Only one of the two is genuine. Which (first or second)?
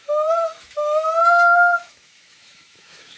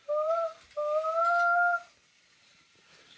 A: second